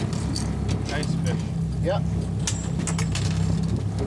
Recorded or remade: recorded